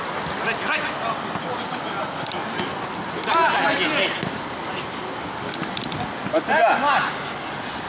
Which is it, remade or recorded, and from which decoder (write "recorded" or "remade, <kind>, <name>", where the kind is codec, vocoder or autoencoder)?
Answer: recorded